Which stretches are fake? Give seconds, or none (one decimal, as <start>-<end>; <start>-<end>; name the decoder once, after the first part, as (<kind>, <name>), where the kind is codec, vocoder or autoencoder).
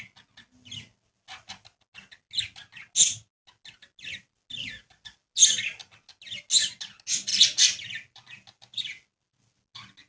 none